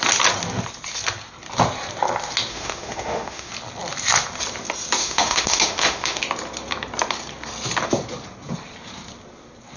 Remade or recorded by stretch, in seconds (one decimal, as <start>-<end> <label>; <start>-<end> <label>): 0.0-2.5 recorded; 2.5-3.5 remade; 3.5-5.0 recorded; 5.0-6.2 remade; 6.2-9.8 recorded

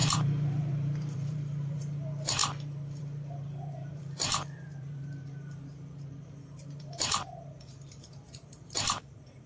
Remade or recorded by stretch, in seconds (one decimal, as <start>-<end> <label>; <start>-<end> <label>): 0.0-2.4 remade; 2.4-3.0 recorded; 3.0-9.5 remade

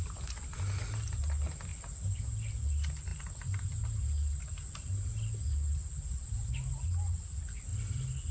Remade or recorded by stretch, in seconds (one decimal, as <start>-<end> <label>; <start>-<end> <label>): 0.0-8.3 recorded

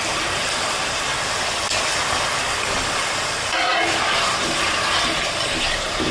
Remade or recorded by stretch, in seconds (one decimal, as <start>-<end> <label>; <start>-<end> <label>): 0.0-1.1 remade; 1.1-2.9 recorded; 2.9-6.1 remade

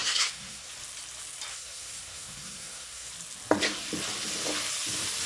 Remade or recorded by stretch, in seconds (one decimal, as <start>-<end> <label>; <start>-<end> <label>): 0.0-0.7 remade; 0.7-1.5 recorded; 1.5-3.1 remade; 3.1-5.3 recorded

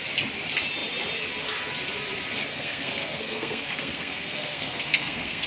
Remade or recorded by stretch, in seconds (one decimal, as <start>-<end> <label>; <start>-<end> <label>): 0.0-2.5 recorded; 2.5-5.5 remade